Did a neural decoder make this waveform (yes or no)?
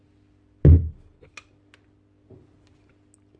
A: no